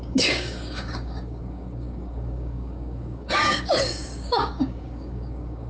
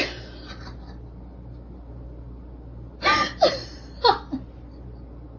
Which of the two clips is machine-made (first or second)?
first